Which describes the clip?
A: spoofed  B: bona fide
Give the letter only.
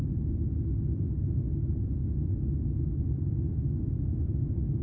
B